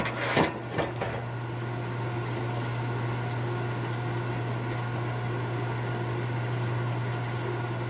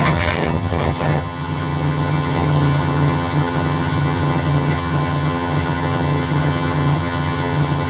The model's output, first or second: second